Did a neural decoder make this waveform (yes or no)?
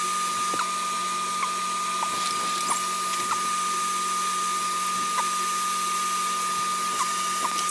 no